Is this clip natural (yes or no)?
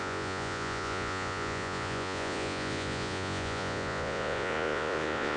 no